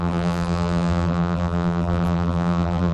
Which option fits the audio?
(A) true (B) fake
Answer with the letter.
B